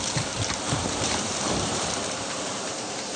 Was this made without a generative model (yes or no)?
no